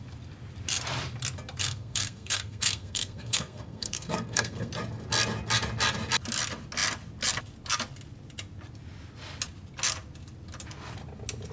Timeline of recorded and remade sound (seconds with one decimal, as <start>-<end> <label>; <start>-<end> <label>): 0.0-1.6 recorded; 1.6-4.7 remade; 4.7-11.5 recorded